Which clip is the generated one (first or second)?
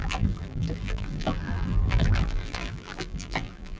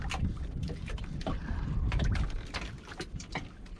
first